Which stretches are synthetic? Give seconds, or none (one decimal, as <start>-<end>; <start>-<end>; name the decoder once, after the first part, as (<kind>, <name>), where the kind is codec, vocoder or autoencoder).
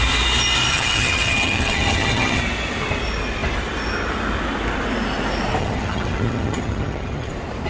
0.7-2.4 (vocoder, HiFi-GAN); 5.6-7.3